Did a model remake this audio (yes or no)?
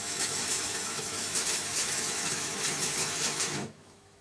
yes